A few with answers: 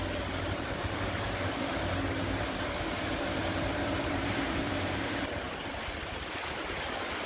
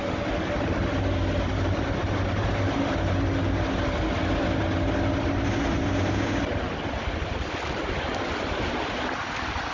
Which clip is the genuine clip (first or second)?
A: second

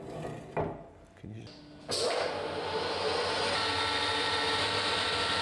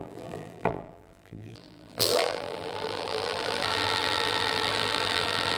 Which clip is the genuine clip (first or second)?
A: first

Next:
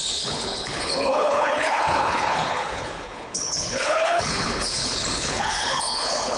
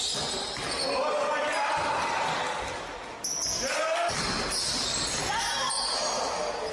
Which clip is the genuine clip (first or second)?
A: second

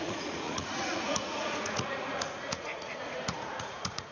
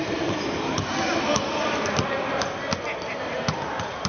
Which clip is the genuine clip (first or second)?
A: second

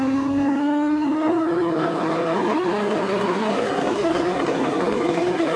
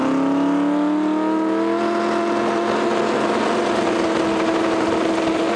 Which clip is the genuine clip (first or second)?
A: second